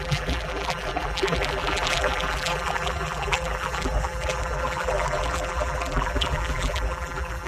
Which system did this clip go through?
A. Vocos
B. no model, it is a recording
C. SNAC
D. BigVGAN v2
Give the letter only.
D